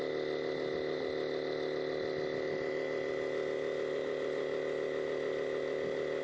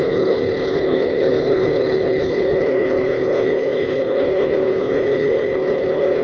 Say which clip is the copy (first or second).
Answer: second